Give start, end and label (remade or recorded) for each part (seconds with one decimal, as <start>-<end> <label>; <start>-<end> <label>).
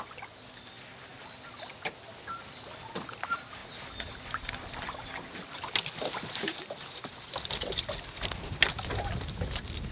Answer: 0.0-9.9 recorded